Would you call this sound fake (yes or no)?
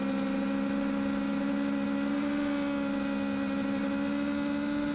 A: no